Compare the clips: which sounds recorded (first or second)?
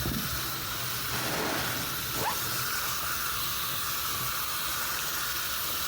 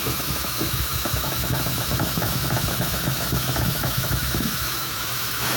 first